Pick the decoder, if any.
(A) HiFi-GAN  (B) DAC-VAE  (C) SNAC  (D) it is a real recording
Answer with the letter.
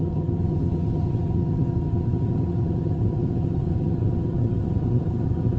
A